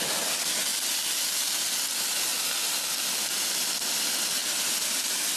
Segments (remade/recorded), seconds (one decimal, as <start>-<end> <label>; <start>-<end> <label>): 0.0-5.4 recorded